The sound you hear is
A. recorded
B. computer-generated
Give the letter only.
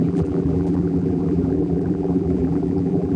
B